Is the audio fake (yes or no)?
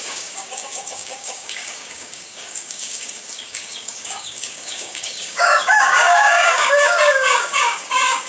yes